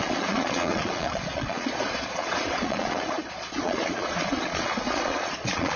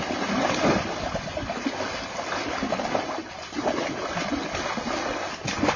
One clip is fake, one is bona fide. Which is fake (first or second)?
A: first